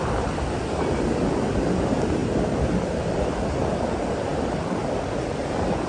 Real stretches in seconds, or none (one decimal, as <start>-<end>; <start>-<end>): 0.0-2.2; 3.7-5.9